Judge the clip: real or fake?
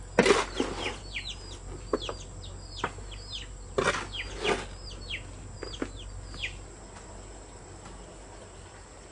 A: real